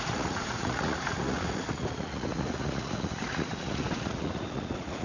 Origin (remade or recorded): remade